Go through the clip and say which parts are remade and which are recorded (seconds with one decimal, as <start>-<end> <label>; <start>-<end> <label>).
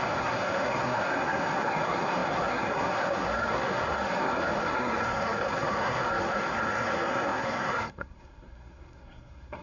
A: 0.0-9.6 remade